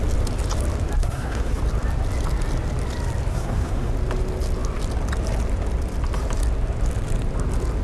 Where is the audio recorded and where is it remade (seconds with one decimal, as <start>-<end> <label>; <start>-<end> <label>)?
0.0-1.0 recorded; 1.0-1.6 remade; 1.6-3.3 recorded; 3.3-3.9 remade; 3.9-7.8 recorded